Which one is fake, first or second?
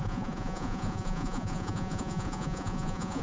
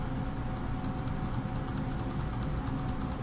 first